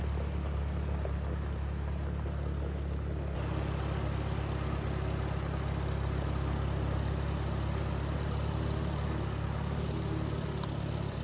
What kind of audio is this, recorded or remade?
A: recorded